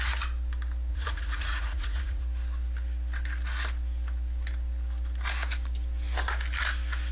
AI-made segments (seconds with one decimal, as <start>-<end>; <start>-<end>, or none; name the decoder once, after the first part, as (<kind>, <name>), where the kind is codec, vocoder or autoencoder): 0.9-2.2 (vocoder, Vocos)